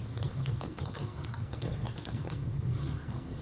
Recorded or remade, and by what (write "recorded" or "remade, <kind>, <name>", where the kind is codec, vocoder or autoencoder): remade, codec, SNAC